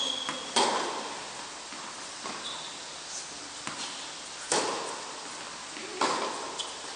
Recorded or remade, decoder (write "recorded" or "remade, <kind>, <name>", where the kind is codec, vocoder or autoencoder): recorded